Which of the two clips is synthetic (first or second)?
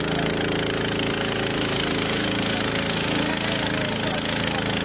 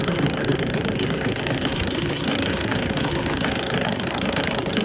second